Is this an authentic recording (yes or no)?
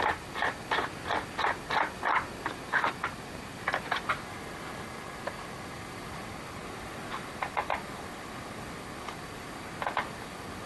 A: yes